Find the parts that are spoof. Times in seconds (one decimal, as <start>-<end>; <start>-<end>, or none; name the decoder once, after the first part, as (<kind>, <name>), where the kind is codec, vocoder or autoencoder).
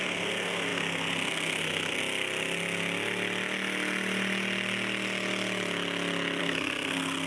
0.0-2.0 (codec, SNAC); 6.4-7.3